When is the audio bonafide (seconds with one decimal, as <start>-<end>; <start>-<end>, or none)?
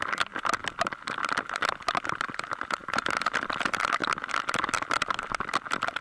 0.0-6.0